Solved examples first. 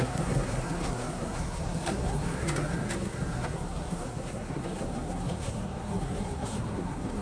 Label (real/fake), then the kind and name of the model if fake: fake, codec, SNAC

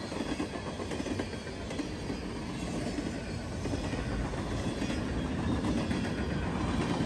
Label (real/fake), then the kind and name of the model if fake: real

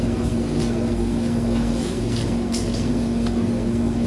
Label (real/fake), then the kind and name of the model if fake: fake, codec, SNAC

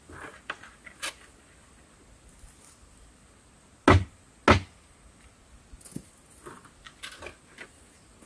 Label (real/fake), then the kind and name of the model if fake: real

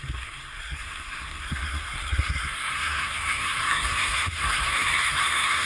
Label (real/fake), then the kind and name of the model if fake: fake, codec, SNAC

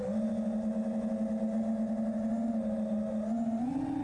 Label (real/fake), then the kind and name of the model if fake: real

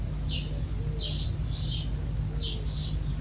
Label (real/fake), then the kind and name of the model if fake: real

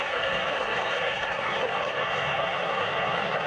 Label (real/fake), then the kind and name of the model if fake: fake, codec, SNAC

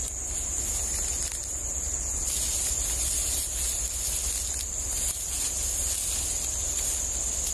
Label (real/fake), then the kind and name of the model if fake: real